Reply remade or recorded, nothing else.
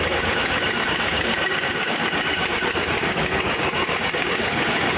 remade